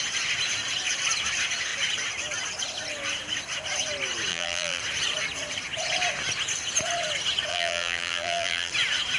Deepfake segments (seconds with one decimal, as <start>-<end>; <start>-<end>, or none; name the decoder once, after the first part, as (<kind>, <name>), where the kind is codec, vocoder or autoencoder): 4.3-4.8 (vocoder, BigVGAN v2); 7.5-8.7